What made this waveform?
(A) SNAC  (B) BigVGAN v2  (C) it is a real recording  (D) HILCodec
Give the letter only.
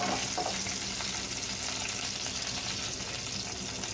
C